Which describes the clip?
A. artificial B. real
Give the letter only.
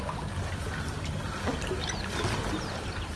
B